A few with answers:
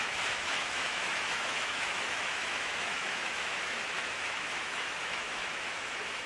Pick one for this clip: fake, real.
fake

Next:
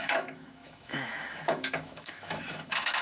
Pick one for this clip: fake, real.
fake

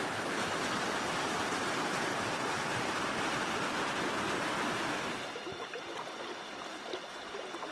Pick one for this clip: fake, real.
real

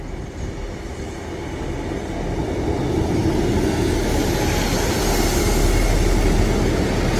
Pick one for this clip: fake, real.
real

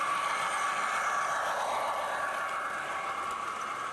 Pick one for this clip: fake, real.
real